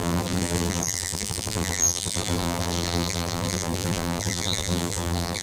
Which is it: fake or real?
fake